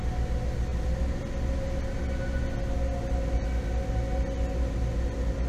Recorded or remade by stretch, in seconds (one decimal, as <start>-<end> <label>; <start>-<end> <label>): 0.0-5.5 recorded